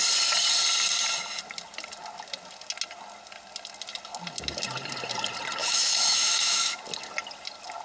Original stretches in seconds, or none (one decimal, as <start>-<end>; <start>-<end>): 0.0-5.6; 6.8-7.8